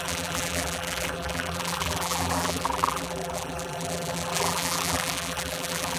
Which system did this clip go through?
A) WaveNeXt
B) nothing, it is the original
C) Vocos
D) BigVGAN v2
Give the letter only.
D